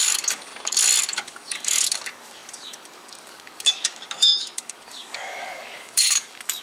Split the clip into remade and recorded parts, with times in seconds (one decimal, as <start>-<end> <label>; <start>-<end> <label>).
0.0-0.5 remade; 0.5-1.0 recorded; 1.0-6.6 remade

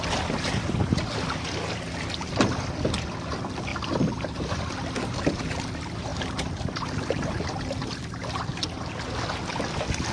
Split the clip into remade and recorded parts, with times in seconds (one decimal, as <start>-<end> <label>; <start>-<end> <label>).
0.0-10.1 recorded

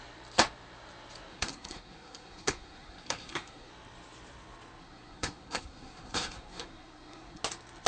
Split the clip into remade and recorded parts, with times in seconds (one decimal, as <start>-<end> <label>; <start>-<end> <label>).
0.0-1.3 recorded; 1.3-3.7 remade; 3.7-4.8 recorded; 4.8-7.4 remade; 7.4-7.9 recorded

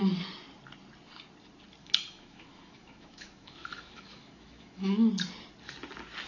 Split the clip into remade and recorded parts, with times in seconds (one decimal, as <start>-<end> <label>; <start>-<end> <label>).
0.0-1.8 recorded; 1.8-5.1 remade; 5.1-6.3 recorded